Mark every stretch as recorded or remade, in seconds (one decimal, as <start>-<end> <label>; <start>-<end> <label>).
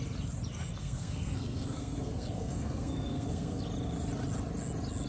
0.0-0.8 recorded; 0.8-3.6 remade; 3.6-5.1 recorded